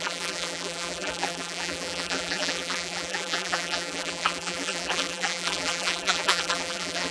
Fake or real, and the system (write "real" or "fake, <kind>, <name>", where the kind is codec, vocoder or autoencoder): fake, vocoder, BigVGAN v2